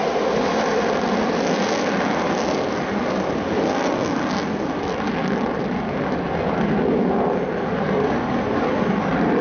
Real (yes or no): yes